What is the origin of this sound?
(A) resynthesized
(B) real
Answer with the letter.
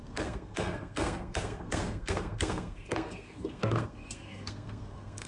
A